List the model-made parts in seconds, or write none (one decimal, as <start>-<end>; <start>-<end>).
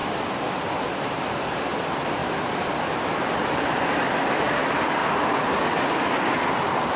none